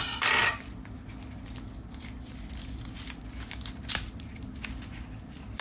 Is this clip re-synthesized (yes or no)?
no